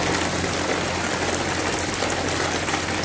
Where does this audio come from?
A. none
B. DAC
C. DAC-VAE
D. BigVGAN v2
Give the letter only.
A